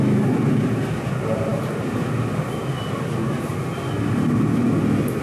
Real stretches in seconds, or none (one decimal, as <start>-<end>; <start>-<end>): 0.0-5.2